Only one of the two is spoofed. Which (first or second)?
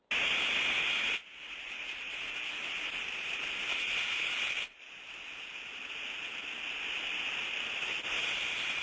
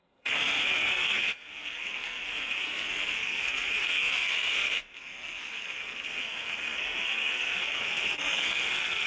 second